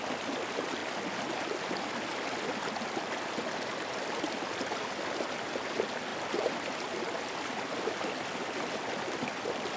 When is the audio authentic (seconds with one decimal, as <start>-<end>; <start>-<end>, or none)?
0.0-9.8